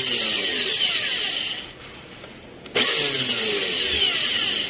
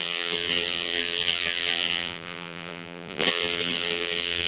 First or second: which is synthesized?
second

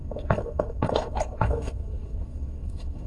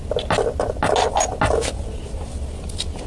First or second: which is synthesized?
first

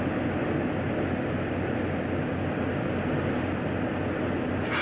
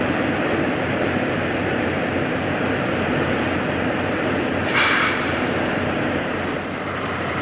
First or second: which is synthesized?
second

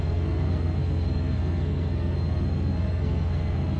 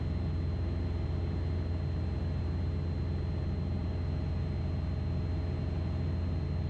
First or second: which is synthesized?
first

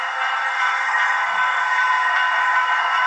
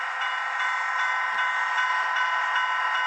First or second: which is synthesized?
first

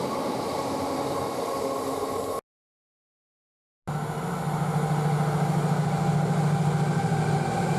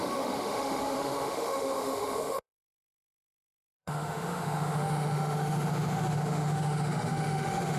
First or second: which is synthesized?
second